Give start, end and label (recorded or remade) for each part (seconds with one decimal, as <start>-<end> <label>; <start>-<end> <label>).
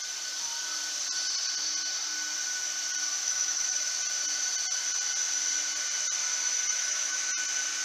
0.0-3.2 recorded; 3.2-3.9 remade; 3.9-6.7 recorded; 6.7-7.3 remade; 7.3-7.8 recorded